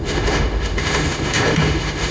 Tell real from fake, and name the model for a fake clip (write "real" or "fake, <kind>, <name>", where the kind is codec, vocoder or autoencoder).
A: fake, autoencoder, DAC-VAE